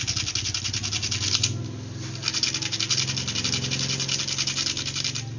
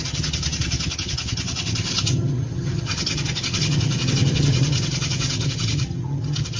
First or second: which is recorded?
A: first